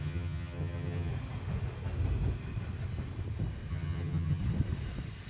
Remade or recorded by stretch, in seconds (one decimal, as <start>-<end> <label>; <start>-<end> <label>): 0.0-1.1 remade; 1.1-3.7 recorded; 3.7-4.4 remade; 4.4-5.3 recorded